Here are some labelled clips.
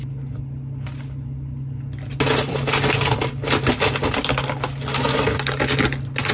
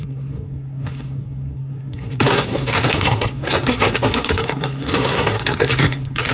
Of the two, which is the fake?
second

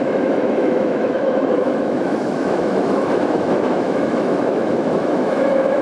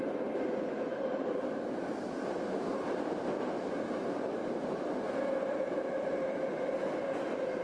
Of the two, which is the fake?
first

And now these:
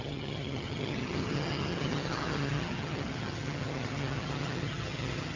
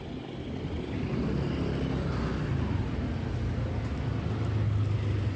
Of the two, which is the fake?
first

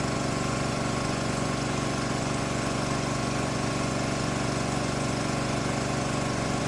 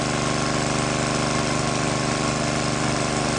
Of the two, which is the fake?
first